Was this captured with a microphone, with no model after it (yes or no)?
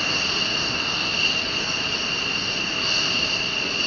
yes